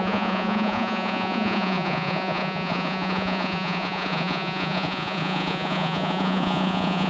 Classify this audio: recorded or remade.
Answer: remade